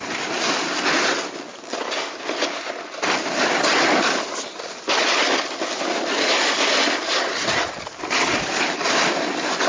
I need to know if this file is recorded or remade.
recorded